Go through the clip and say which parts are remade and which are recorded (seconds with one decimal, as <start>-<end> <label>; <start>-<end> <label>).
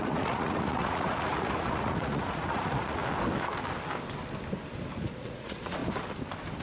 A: 0.0-3.0 remade; 3.0-4.9 recorded; 4.9-5.8 remade; 5.8-6.6 recorded